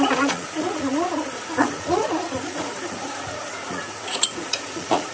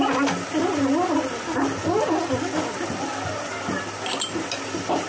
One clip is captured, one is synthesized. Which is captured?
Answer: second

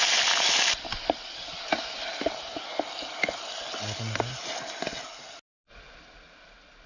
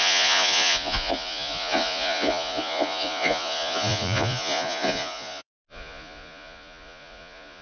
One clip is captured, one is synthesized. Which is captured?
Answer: first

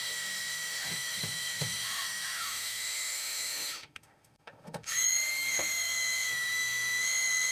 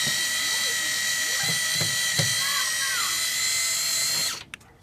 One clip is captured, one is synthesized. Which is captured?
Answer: second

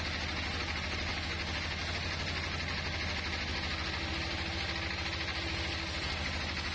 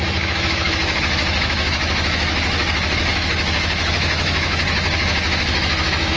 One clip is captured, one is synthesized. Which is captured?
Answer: first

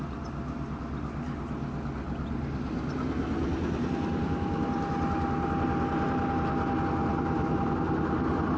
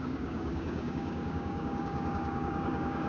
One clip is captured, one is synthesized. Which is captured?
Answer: first